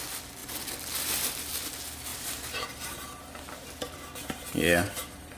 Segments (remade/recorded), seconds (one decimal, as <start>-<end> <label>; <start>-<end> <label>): 0.0-2.1 recorded; 2.1-5.4 remade